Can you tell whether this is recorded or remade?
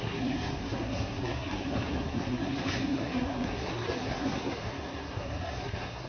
remade